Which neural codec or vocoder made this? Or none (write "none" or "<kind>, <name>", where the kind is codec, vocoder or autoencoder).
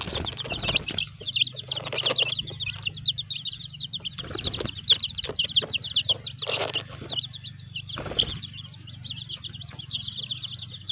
none